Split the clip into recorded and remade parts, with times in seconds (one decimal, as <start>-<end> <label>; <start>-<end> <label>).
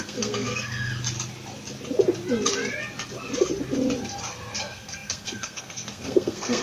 0.0-0.9 remade; 0.9-4.6 recorded; 4.6-6.6 remade